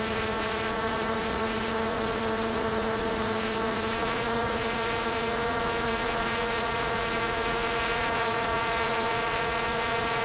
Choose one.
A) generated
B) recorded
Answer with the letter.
A